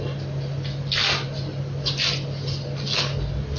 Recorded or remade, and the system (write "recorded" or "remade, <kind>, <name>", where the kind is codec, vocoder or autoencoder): recorded